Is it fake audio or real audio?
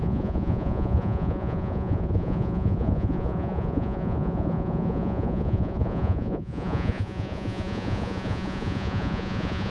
fake